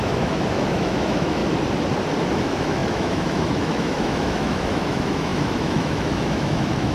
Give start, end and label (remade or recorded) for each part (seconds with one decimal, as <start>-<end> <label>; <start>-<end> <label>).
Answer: 0.0-1.4 remade; 1.4-2.3 recorded; 2.3-6.9 remade